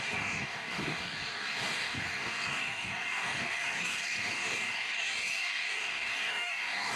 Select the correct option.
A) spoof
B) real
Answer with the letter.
A